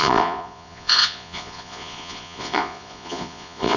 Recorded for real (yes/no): no